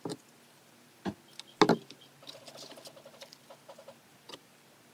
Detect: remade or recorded recorded